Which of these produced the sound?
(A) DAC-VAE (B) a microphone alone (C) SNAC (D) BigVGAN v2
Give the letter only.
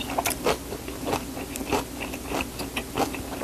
B